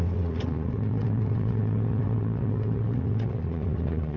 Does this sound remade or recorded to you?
remade